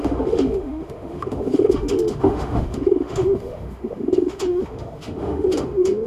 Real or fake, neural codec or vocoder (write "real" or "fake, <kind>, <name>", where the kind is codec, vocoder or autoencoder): fake, autoencoder, DAC-VAE